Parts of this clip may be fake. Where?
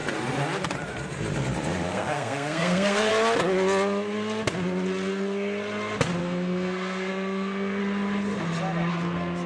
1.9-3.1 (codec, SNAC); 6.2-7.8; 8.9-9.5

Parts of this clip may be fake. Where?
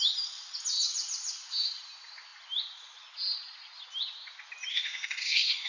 4.7-5.7 (codec, SNAC)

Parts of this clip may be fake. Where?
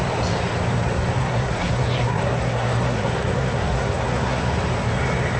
1.2-4.4 (codec, SNAC)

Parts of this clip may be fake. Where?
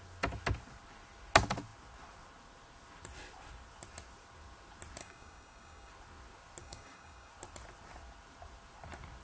5.0-5.9 (codec, DAC); 6.6-7.3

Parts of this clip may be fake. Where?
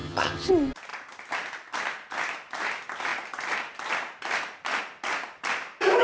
0.0-0.5 (vocoder, HiFi-GAN)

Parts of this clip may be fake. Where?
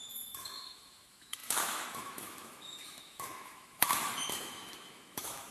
0.0-5.5 (autoencoder, DAC-VAE)